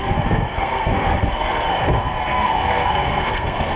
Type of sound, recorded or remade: remade